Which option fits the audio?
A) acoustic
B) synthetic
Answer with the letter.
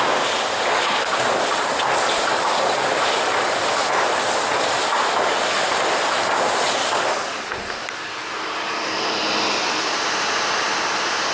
A